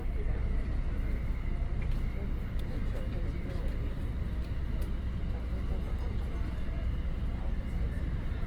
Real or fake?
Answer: real